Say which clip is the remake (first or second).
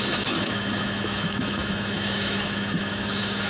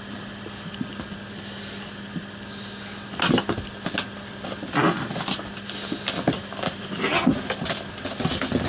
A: first